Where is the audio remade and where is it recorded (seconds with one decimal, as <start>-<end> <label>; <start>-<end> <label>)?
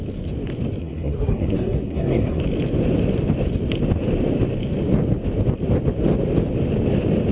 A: 0.0-0.8 recorded; 0.8-2.4 remade; 2.4-7.3 recorded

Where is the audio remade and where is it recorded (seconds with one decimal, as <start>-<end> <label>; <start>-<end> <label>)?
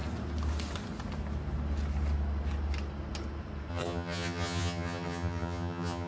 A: 0.0-3.7 recorded; 3.7-6.1 remade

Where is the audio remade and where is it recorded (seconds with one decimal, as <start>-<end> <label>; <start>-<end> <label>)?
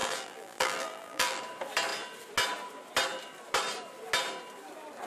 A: 0.0-1.4 remade; 1.4-5.1 recorded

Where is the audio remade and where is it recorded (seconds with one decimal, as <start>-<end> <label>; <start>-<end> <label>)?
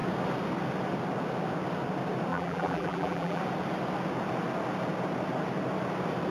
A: 0.0-2.3 recorded; 2.3-3.4 remade; 3.4-6.3 recorded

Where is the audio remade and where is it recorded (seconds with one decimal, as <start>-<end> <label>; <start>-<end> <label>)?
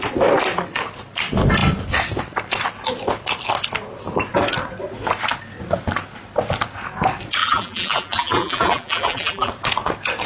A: 0.0-7.4 recorded; 7.4-9.5 remade; 9.5-10.3 recorded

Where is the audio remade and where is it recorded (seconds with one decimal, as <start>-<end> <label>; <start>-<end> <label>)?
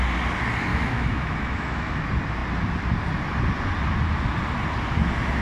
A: 0.0-0.7 recorded; 0.7-2.0 remade; 2.0-5.4 recorded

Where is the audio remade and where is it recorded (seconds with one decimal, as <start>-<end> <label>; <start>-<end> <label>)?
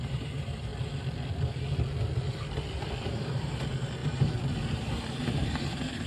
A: 0.0-0.7 remade; 0.7-3.0 recorded; 3.0-6.1 remade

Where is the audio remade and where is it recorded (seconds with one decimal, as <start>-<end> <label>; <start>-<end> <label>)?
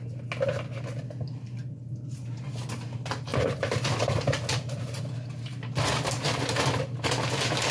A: 0.0-3.3 recorded; 3.3-5.0 remade; 5.0-7.7 recorded